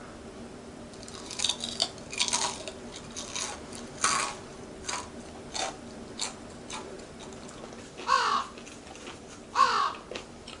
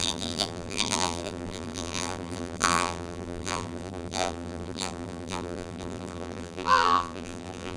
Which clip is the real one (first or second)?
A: first